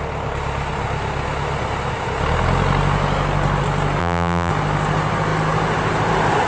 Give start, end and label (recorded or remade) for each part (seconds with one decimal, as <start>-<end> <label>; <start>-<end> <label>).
0.0-4.0 recorded; 4.0-4.5 remade; 4.5-6.5 recorded